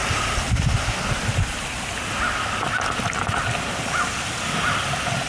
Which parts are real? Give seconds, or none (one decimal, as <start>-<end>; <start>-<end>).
0.0-5.3